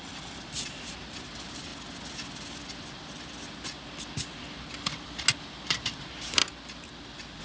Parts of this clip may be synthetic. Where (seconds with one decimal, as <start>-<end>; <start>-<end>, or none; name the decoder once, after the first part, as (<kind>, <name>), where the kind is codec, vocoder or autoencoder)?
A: 0.0-1.7 (vocoder, BigVGAN v2); 5.6-6.4